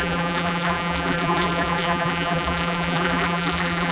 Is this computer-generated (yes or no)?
yes